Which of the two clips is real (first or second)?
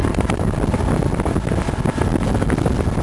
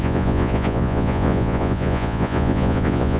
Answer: first